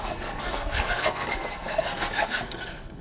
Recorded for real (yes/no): no